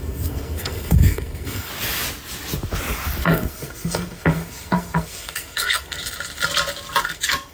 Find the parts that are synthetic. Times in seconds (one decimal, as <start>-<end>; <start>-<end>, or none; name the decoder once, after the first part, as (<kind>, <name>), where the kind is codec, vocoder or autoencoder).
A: 0.0-1.7 (codec, SNAC); 3.2-6.0; 7.0-7.5